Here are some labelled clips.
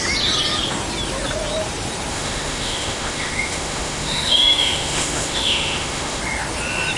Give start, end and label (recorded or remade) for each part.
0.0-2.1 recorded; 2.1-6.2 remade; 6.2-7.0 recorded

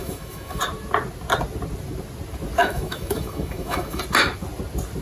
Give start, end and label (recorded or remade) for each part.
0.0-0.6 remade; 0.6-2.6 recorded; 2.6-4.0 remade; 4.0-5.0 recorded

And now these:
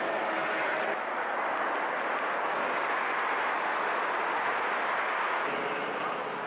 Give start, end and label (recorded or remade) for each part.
0.0-6.5 recorded

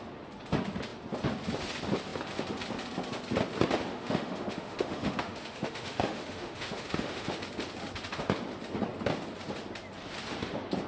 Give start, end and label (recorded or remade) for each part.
0.0-3.9 recorded; 3.9-7.4 remade; 7.4-10.9 recorded

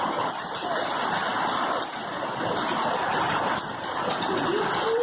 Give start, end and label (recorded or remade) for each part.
0.0-5.0 recorded

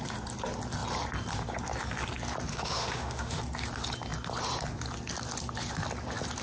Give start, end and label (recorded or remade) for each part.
0.0-2.5 recorded; 2.5-3.4 remade; 3.4-6.4 recorded

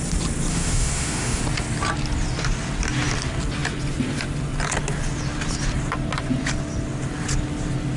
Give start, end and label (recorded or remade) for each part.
0.0-0.5 recorded; 0.5-1.4 remade; 1.4-8.0 recorded